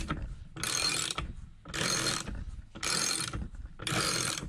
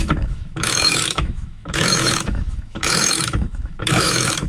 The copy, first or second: second